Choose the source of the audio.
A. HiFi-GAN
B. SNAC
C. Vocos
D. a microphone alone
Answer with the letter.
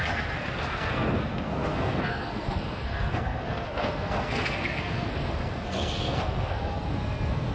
B